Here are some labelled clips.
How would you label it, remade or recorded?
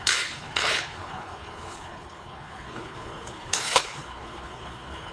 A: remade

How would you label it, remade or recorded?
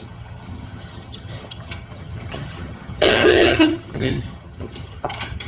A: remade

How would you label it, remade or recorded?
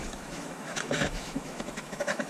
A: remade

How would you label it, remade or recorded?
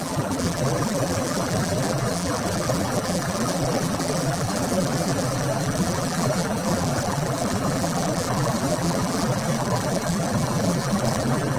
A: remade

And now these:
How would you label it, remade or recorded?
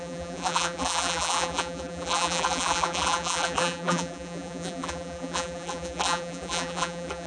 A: remade